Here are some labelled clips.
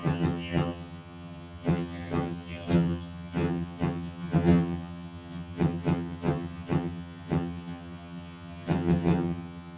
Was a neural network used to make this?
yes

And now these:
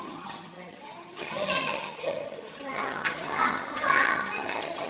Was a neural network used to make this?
yes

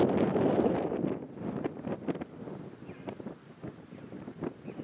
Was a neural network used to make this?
no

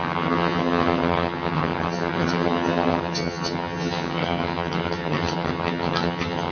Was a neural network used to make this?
yes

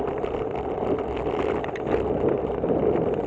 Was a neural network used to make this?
no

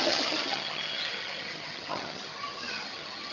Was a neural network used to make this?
yes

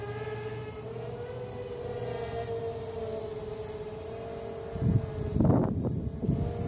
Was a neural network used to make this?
no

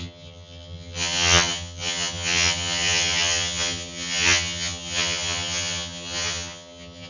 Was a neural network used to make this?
yes